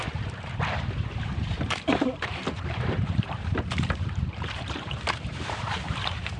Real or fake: fake